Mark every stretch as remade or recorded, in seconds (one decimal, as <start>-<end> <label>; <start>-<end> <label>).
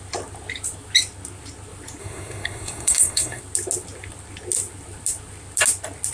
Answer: 0.0-2.0 recorded; 2.0-3.4 remade; 3.4-6.1 recorded